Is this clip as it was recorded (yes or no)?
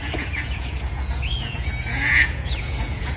no